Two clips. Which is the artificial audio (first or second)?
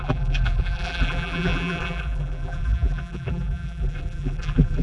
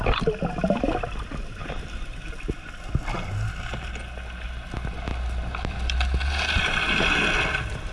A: first